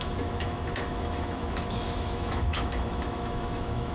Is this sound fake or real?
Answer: fake